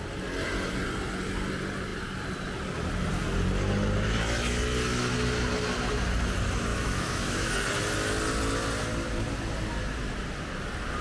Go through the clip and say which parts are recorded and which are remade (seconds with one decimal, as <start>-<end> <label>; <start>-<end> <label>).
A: 0.0-6.7 recorded; 6.7-7.5 remade; 7.5-11.0 recorded